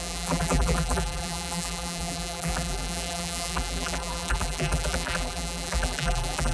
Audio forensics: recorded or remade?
remade